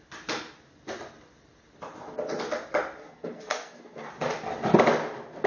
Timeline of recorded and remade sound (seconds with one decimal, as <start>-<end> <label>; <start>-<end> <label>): 0.0-3.0 recorded; 3.0-4.1 remade; 4.1-5.5 recorded